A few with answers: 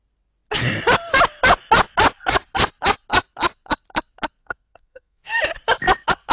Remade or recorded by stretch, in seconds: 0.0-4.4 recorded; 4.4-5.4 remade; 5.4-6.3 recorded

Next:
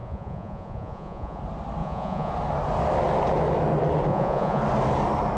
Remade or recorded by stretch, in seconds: 0.0-1.4 remade; 1.4-1.8 recorded; 1.8-2.3 remade; 2.3-4.1 recorded; 4.1-4.6 remade; 4.6-5.4 recorded

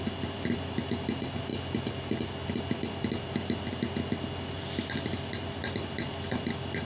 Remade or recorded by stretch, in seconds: 0.0-6.8 recorded

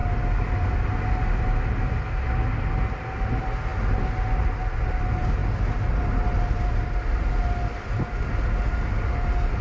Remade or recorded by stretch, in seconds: 0.0-9.6 recorded

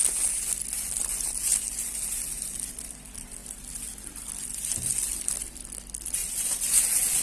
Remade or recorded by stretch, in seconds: 0.0-6.2 recorded; 6.2-6.7 remade; 6.7-7.2 recorded

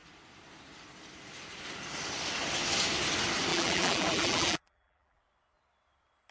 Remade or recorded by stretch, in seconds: 0.0-3.5 recorded; 3.5-5.2 remade; 5.2-6.3 recorded